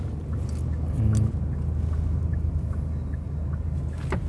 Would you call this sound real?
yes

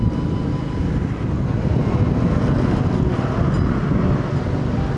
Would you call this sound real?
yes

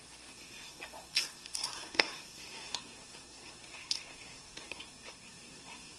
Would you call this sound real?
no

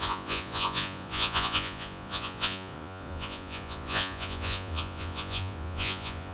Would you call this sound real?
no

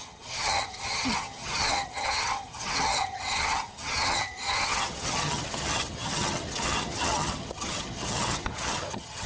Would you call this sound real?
no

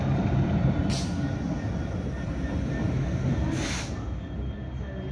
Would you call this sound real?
yes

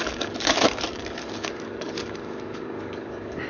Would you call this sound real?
no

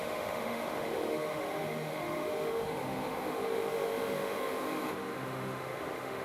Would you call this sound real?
no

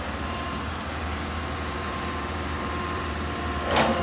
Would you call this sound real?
no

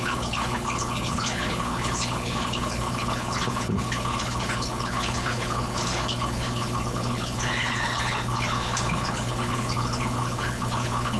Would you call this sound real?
no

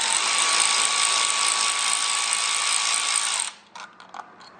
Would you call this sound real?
yes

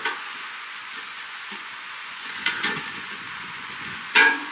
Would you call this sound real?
no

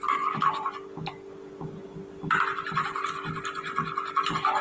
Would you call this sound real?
yes